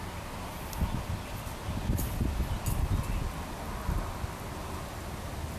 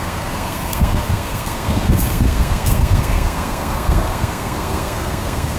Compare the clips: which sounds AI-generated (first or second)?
second